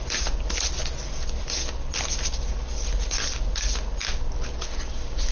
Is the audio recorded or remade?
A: recorded